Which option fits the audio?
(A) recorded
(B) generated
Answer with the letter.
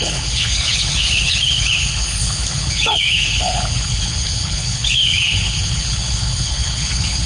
B